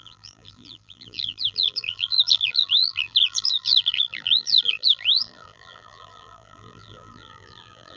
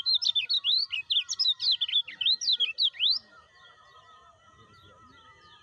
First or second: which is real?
second